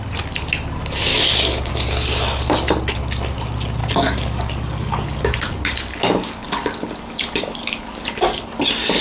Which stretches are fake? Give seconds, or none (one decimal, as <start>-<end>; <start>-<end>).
1.1-1.7; 3.8-8.6